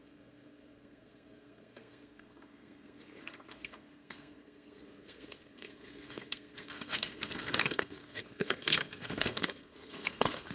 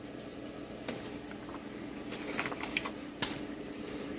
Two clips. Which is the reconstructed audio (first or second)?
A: first